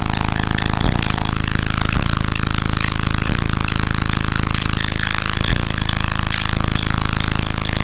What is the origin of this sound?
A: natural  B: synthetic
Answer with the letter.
A